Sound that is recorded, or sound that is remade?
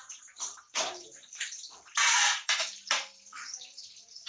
remade